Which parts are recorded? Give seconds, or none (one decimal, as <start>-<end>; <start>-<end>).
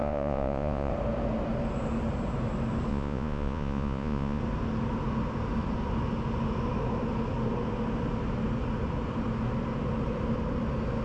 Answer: 0.9-2.9; 4.4-11.0